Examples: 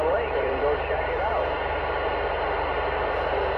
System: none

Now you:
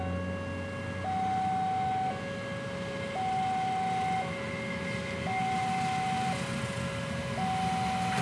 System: none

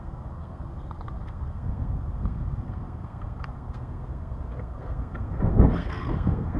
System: codec, SNAC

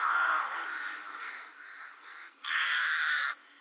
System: codec, SNAC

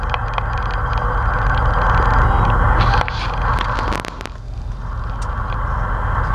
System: none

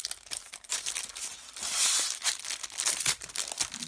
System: none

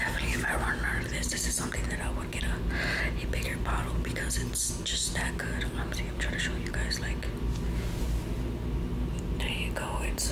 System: none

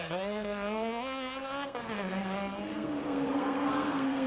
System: codec, SNAC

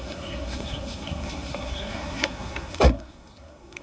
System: codec, SNAC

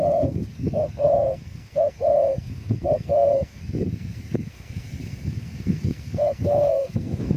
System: codec, SNAC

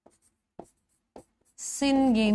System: none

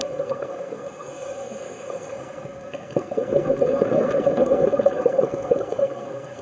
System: codec, SNAC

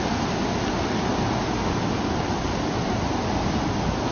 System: none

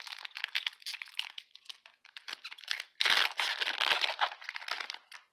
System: none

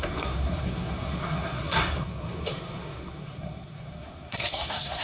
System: codec, SNAC